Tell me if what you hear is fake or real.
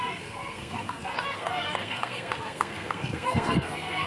fake